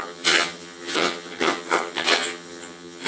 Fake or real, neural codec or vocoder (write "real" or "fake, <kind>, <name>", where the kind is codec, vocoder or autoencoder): fake, vocoder, HiFi-GAN